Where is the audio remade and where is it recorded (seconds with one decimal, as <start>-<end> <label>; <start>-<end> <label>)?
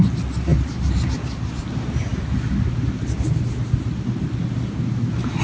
0.0-5.4 recorded